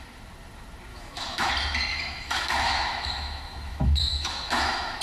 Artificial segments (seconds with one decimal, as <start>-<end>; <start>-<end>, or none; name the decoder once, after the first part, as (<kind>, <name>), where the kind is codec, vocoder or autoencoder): 0.9-1.5 (autoencoder, DAC-VAE); 1.9-5.0